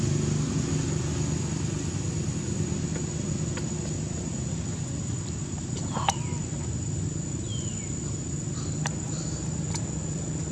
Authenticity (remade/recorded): recorded